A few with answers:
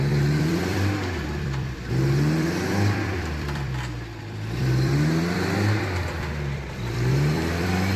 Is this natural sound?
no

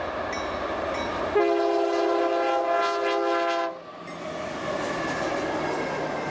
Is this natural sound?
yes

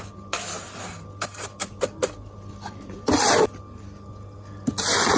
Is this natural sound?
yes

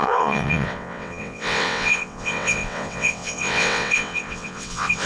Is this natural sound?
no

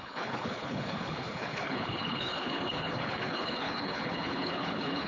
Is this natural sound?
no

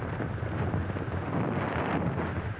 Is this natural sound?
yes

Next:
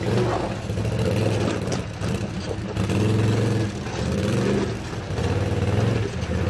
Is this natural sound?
yes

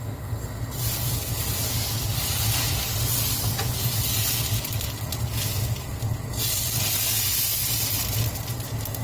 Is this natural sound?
yes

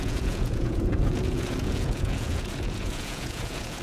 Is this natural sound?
no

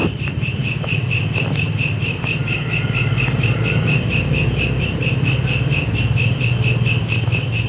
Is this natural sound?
yes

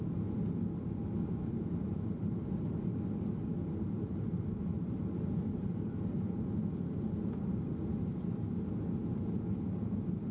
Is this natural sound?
yes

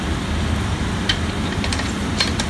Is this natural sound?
yes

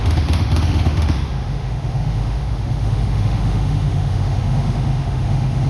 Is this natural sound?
no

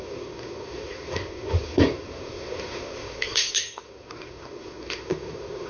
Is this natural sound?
no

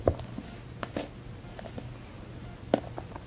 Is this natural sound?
yes